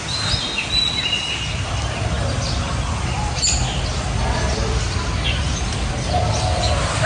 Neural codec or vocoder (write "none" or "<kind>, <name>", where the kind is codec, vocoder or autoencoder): none